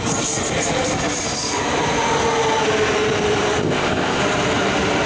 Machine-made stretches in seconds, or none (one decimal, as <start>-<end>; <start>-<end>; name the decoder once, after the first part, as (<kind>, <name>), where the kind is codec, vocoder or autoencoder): 3.6-4.2 (codec, ZipCodec)